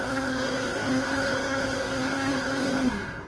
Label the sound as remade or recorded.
remade